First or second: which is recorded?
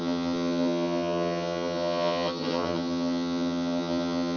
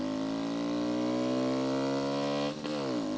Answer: second